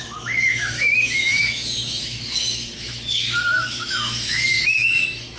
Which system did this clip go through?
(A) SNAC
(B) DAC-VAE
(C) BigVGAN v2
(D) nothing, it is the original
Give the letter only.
B